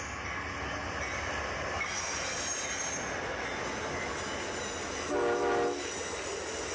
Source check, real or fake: real